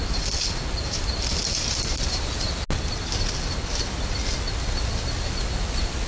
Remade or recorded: recorded